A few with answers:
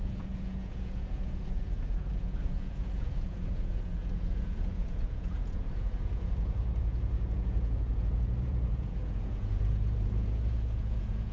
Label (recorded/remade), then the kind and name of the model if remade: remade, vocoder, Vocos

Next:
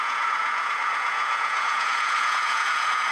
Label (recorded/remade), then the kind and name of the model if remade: remade, vocoder, Vocos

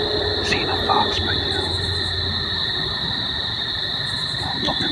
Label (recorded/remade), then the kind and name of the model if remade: recorded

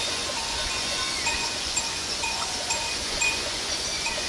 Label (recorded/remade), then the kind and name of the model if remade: remade, vocoder, Vocos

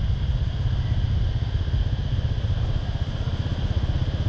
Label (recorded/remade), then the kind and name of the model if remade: recorded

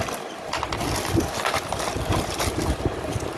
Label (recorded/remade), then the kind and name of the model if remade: recorded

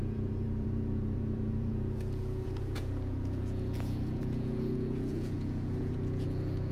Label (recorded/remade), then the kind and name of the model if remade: remade, vocoder, Vocos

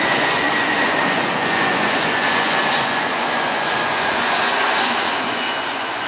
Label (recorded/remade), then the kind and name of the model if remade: remade, vocoder, Vocos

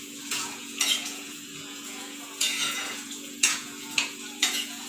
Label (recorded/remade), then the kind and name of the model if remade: remade, vocoder, Vocos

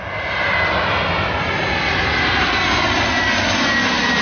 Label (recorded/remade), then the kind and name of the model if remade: recorded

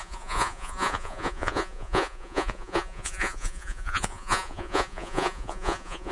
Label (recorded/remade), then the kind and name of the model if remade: remade, vocoder, Vocos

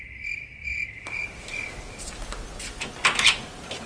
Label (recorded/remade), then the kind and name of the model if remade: recorded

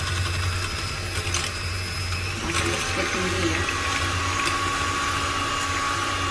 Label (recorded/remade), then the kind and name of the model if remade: recorded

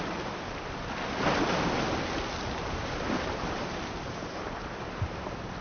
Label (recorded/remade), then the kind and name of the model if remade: recorded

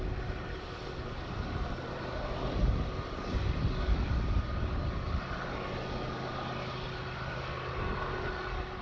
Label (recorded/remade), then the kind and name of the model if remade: recorded